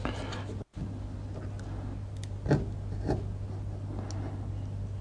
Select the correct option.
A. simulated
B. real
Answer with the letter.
B